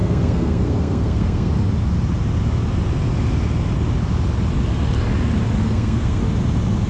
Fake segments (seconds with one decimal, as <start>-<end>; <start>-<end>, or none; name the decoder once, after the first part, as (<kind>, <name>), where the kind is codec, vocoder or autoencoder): 0.0-1.5 (codec, SNAC); 5.6-6.2